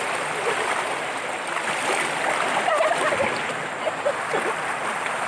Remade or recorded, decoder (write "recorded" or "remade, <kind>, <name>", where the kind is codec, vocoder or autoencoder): recorded